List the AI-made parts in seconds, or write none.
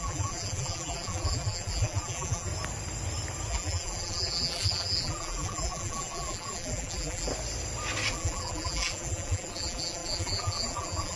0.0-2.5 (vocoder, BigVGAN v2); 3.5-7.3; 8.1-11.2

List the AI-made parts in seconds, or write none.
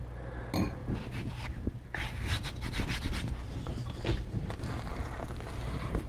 4.9-6.1 (vocoder, BigVGAN v2)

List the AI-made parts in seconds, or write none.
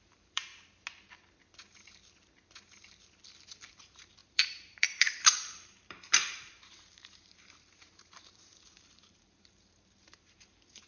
0.0-0.5 (vocoder, BigVGAN v2); 3.7-10.9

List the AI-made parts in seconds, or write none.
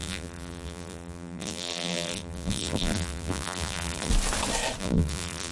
0.0-4.1 (vocoder, BigVGAN v2); 4.8-5.5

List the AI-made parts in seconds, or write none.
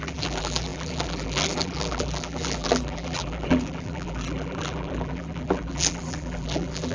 0.0-6.9 (vocoder, BigVGAN v2)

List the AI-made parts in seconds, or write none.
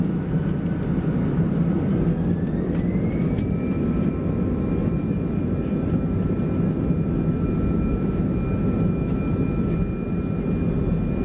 none